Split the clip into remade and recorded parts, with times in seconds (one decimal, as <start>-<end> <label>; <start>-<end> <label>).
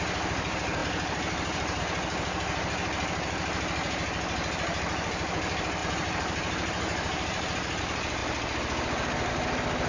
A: 0.0-5.8 recorded; 5.8-7.8 remade; 7.8-9.9 recorded